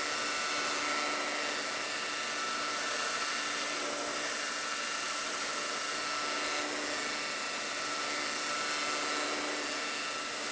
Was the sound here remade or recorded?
recorded